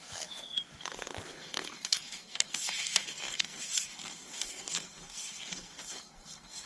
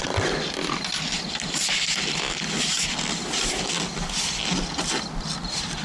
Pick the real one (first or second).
second